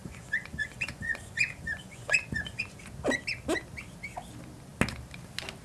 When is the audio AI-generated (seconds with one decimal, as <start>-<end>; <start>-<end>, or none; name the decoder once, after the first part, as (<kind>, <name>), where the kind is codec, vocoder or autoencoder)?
0.0-2.8 (vocoder, Vocos)